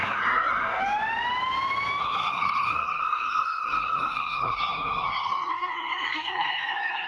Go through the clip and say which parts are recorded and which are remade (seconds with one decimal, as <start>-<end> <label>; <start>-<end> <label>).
0.0-0.8 remade; 0.8-2.0 recorded; 2.0-7.1 remade